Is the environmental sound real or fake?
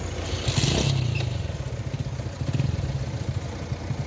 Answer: real